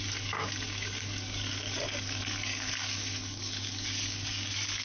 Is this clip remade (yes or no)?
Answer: yes